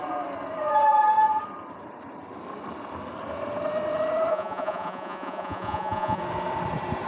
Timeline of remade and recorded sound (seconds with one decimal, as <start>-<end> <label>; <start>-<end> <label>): 0.0-4.3 recorded; 4.3-6.2 remade; 6.2-7.1 recorded